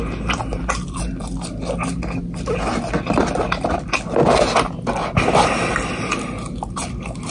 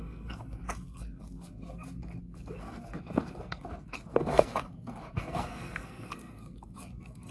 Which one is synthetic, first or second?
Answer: second